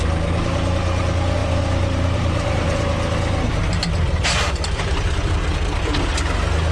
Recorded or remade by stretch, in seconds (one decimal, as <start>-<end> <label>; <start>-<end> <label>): 0.0-1.4 recorded; 1.4-5.3 remade; 5.3-6.7 recorded